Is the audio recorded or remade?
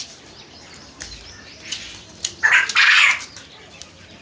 recorded